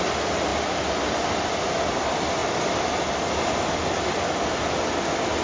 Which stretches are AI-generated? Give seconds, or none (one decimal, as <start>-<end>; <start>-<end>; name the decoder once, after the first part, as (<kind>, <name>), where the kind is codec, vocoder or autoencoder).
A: none